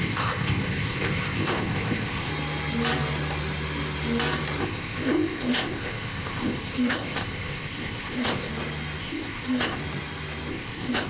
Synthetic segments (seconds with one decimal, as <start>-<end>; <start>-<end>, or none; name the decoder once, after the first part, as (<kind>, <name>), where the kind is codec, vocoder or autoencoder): 0.0-2.3 (codec, ZipCodec); 4.6-8.5; 9.0-9.8; 10.5-11.1